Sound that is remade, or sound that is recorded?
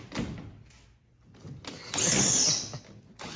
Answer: recorded